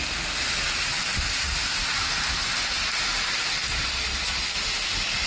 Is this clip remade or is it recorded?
recorded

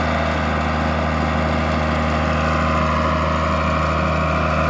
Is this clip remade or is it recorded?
recorded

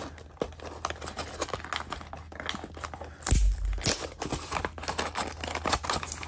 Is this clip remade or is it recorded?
recorded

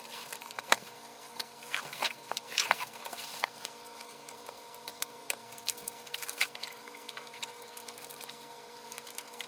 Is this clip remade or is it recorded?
remade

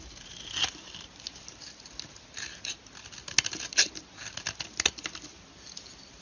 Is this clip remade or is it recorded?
recorded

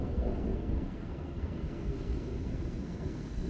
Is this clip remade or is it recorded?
remade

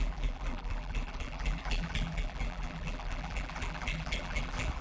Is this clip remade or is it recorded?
remade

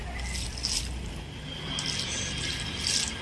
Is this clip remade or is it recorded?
recorded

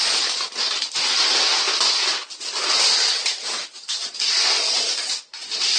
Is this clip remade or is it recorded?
recorded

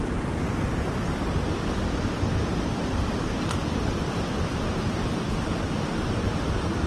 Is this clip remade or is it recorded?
recorded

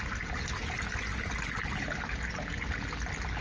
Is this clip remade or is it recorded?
recorded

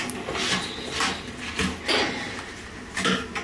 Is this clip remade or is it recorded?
recorded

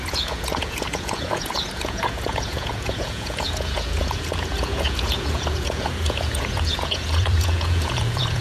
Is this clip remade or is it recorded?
remade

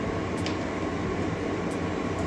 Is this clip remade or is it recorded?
recorded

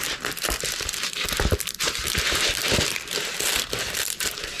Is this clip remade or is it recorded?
recorded